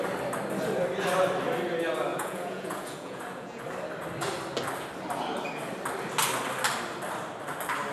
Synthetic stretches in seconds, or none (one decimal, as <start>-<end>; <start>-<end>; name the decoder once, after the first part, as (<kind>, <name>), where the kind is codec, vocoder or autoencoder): 2.1-3.6 (vocoder, Vocos)